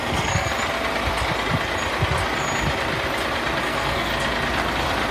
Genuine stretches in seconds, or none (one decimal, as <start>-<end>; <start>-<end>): 0.5-3.6; 4.1-5.1